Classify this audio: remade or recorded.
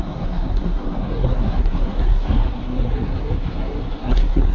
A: remade